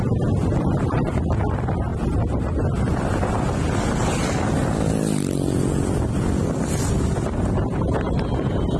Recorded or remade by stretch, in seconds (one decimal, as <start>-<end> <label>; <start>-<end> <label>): 0.0-8.8 recorded